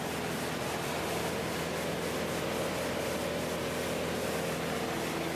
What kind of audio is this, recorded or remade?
recorded